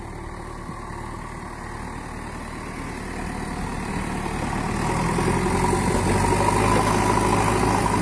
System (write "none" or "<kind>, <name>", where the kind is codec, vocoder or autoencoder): none